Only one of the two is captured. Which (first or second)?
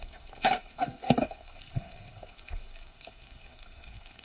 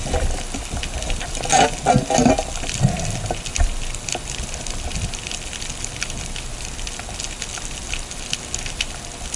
second